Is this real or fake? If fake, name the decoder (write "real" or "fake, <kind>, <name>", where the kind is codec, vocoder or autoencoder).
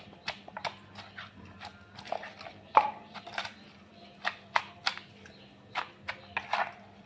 real